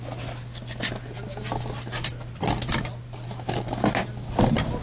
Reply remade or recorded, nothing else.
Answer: recorded